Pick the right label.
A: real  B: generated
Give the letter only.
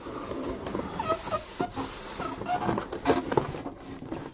A